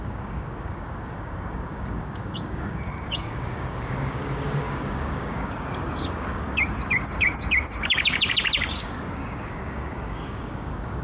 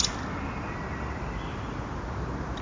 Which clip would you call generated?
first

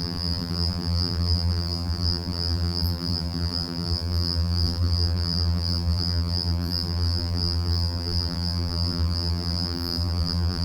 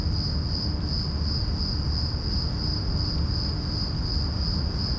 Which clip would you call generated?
first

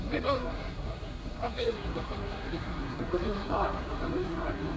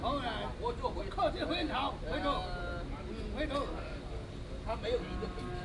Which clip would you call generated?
first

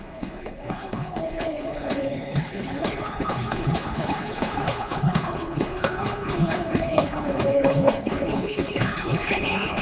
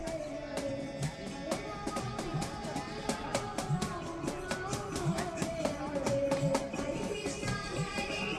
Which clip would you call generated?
first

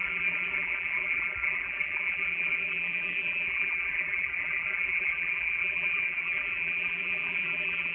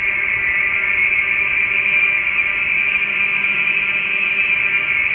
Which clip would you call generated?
first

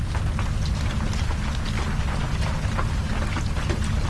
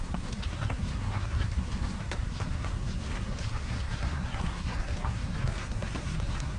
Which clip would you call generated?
second